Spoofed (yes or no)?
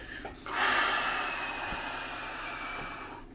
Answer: no